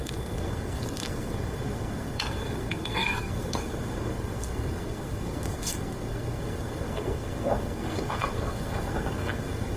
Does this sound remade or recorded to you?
remade